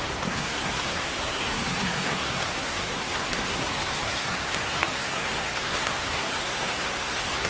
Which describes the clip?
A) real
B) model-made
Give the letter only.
B